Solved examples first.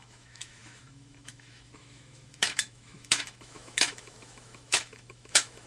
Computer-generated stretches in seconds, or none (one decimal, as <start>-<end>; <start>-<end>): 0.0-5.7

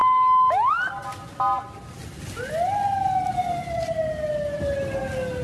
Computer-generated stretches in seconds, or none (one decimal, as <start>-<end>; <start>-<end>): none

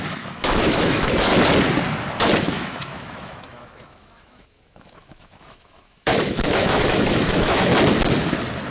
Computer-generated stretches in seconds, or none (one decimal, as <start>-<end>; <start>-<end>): 0.0-1.3; 2.4-7.7